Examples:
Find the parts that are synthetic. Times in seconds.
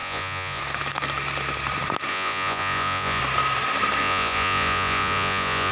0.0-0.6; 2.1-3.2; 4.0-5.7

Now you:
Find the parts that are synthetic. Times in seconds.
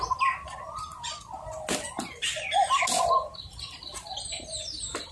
none